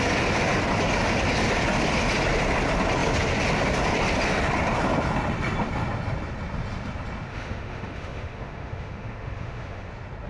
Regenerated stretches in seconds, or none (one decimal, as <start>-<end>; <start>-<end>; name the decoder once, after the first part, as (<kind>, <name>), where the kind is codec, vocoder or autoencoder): 7.3-9.9 (autoencoder, DAC-VAE)